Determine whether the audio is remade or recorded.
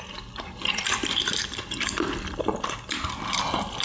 remade